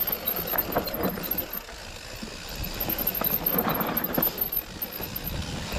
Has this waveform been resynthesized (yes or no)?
no